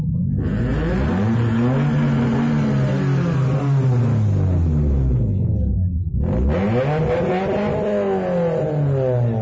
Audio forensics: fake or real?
real